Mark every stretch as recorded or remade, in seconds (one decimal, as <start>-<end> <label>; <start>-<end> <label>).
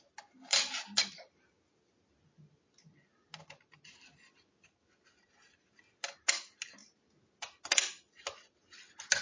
0.0-9.2 recorded